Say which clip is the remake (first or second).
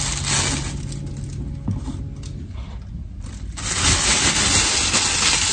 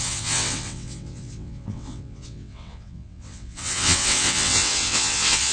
second